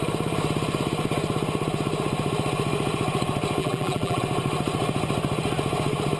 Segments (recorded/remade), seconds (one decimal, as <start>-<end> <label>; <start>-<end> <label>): 0.0-3.6 recorded; 3.6-4.2 remade; 4.2-6.2 recorded